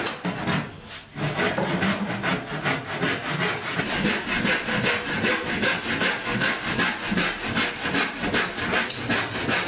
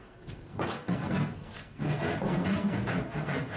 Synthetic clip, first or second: second